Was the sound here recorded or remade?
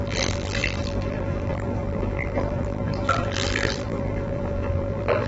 remade